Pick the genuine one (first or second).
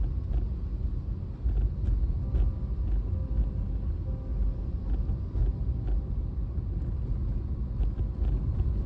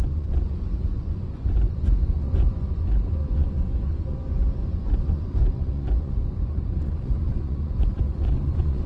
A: first